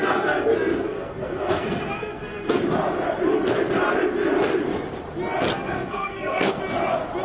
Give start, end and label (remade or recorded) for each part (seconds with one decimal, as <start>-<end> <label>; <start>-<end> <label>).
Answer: 0.0-2.6 remade; 2.6-5.5 recorded; 5.5-6.6 remade; 6.6-7.2 recorded